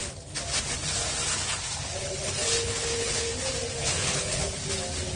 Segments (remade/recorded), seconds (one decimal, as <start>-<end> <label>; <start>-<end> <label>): 0.0-2.0 recorded; 2.0-3.3 remade; 3.3-3.8 recorded; 3.8-4.7 remade; 4.7-5.2 recorded